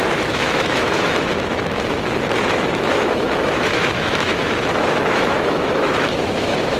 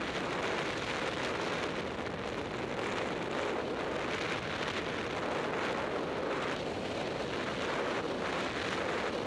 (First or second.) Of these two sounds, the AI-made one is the first